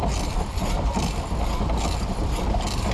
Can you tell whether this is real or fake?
real